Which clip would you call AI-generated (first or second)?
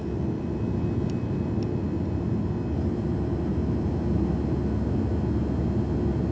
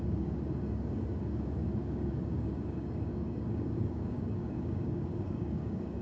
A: second